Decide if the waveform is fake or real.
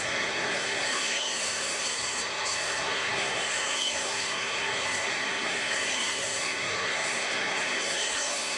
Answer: fake